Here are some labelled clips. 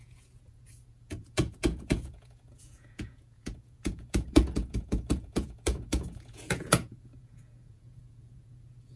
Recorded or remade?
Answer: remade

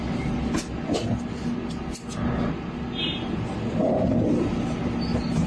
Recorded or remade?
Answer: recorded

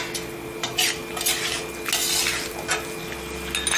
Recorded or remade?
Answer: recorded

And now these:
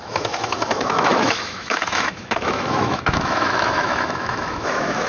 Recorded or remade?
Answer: remade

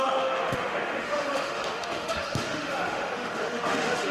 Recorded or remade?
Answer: remade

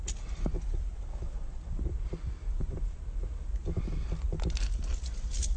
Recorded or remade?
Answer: recorded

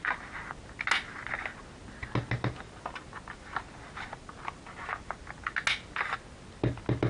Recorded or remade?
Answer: recorded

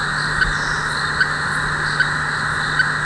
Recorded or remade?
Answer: recorded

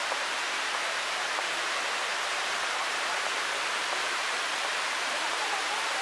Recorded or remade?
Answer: remade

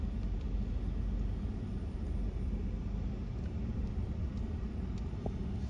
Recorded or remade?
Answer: recorded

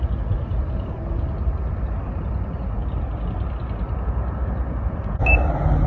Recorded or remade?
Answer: recorded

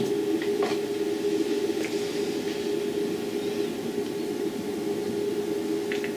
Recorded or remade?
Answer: recorded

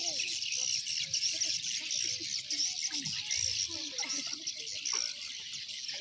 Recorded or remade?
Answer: recorded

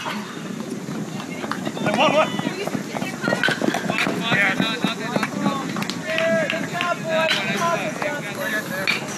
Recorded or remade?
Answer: recorded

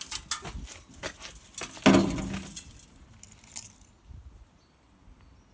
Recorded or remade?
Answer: recorded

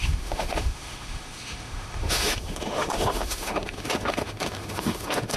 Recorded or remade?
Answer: remade